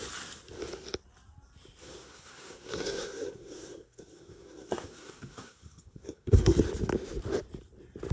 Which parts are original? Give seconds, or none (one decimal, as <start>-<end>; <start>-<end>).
0.0-1.8; 6.6-8.1